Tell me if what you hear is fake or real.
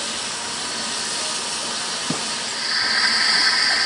real